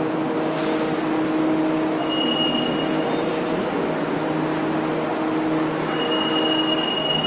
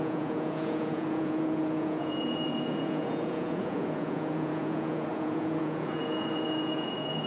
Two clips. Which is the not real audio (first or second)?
second